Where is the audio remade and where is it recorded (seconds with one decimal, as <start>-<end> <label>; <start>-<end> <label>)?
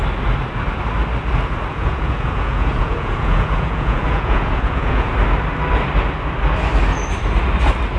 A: 0.0-1.7 recorded; 1.7-5.1 remade; 5.1-8.0 recorded